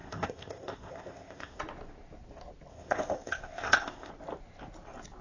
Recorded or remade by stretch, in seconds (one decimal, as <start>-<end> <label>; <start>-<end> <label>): 0.0-1.6 remade; 1.6-2.7 recorded; 2.7-4.1 remade; 4.1-5.2 recorded